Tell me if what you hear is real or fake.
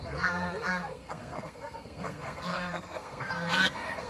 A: fake